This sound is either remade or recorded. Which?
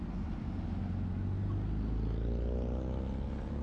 recorded